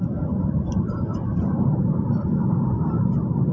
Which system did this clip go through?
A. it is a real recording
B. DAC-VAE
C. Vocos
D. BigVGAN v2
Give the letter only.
D